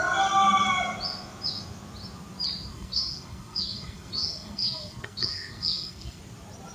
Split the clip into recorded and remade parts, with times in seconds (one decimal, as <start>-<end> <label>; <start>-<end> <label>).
0.0-2.7 recorded; 2.7-6.2 remade; 6.2-6.7 recorded